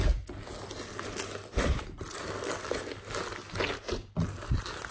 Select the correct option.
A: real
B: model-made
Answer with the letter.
A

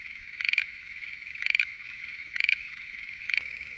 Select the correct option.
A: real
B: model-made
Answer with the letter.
B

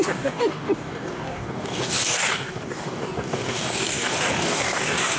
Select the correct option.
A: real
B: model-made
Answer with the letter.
B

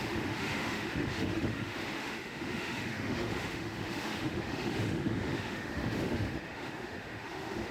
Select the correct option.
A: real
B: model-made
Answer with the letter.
B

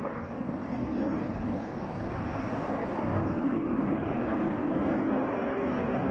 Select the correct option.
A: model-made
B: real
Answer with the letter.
A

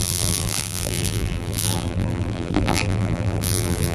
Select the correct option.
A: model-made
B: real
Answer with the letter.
A